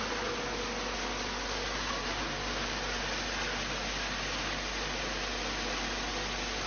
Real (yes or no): yes